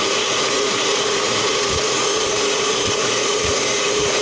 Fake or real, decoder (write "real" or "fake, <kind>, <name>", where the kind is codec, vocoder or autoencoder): fake, vocoder, Vocos